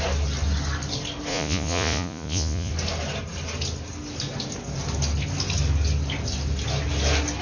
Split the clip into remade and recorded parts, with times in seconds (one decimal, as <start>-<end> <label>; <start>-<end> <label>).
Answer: 0.0-1.3 recorded; 1.3-2.7 remade; 2.7-7.4 recorded